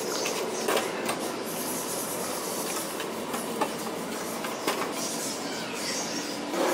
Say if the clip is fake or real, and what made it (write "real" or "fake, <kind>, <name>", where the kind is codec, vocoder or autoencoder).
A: real